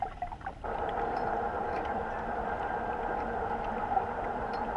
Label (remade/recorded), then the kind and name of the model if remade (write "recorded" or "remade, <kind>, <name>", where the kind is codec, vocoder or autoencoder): remade, vocoder, BigVGAN v2